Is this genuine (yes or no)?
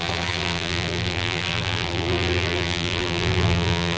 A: no